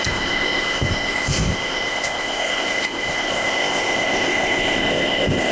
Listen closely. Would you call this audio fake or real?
fake